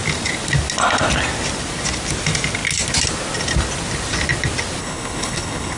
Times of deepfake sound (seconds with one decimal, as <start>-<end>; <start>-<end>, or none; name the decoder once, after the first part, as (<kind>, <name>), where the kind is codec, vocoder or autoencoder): 4.8-5.8 (codec, HILCodec)